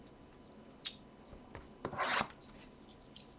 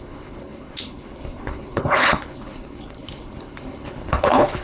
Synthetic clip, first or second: second